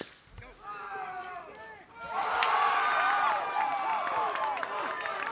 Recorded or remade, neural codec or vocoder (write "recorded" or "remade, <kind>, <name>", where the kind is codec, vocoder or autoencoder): recorded